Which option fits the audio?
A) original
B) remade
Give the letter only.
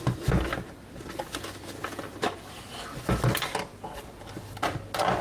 A